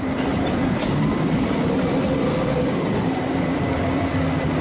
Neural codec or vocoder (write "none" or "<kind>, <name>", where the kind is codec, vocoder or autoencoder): none